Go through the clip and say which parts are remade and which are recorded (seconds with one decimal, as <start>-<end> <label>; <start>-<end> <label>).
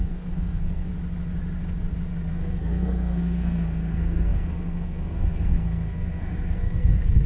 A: 0.0-0.9 remade; 0.9-2.3 recorded; 2.3-7.3 remade